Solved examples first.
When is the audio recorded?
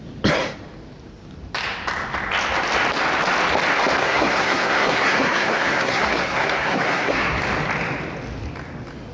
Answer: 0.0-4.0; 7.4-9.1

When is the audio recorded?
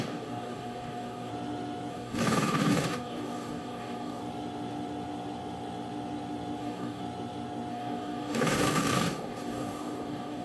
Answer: 1.3-1.9; 4.2-6.6; 7.0-7.7